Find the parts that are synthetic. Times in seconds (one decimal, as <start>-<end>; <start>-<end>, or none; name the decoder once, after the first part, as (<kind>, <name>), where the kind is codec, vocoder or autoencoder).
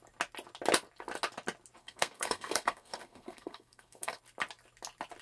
1.8-4.2 (codec, SNAC)